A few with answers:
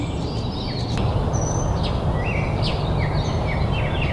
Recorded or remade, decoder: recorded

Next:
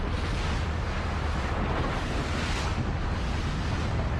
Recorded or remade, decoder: recorded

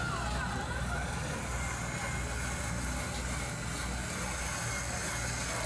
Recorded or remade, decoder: recorded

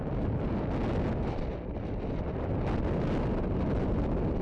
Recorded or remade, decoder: recorded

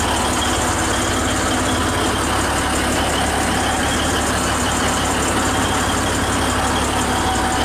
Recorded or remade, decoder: recorded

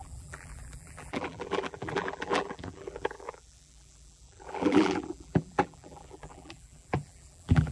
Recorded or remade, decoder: remade, vocoder, BigVGAN v2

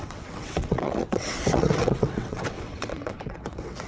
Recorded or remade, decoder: remade, vocoder, WaveNeXt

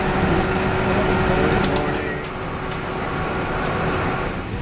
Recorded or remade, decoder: recorded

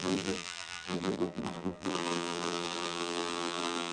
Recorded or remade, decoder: remade, vocoder, BigVGAN v2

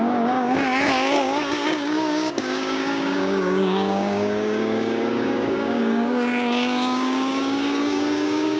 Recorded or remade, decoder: remade, codec, DAC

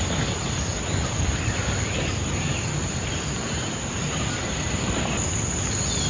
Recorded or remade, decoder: recorded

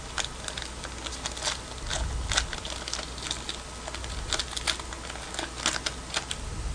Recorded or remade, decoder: recorded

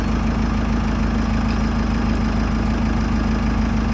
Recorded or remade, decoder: recorded